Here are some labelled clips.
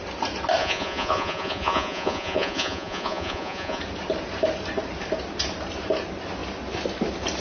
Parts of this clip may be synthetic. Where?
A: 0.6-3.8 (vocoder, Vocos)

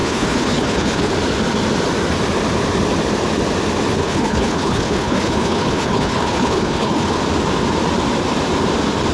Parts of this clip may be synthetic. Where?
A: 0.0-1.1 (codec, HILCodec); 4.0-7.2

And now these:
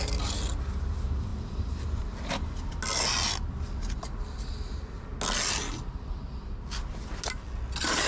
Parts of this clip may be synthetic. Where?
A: none

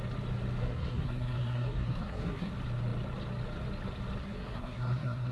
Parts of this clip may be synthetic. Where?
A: 0.6-2.5 (codec, SNAC); 4.2-5.3